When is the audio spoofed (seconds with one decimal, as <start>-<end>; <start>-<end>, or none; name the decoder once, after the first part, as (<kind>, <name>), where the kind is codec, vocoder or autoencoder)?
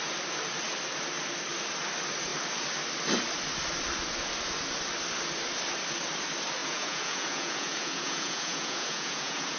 6.6-9.6 (vocoder, Vocos)